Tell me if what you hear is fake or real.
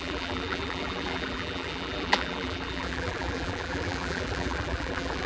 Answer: fake